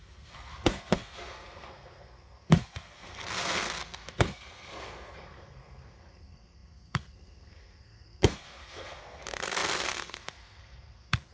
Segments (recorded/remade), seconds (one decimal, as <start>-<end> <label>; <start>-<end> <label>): 0.0-11.3 remade